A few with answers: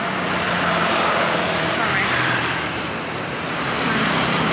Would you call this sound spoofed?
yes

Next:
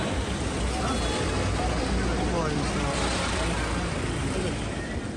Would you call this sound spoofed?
no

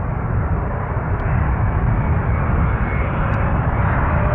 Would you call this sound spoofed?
yes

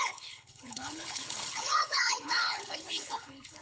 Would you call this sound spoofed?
yes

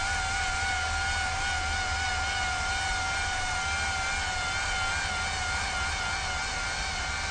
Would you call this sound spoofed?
no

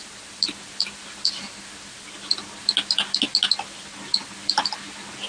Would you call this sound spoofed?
no